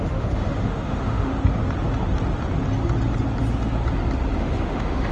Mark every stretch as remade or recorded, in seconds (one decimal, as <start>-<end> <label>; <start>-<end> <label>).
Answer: 0.0-1.3 remade; 1.3-4.4 recorded; 4.4-5.1 remade